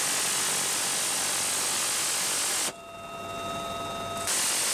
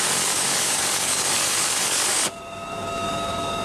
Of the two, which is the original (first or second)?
first